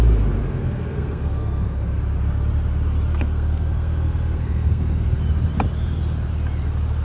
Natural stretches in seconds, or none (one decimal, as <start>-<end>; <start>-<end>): 0.0-0.4; 2.0-3.1; 5.2-7.0